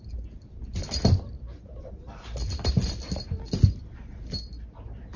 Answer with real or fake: real